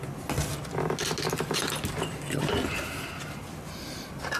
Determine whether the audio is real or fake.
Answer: real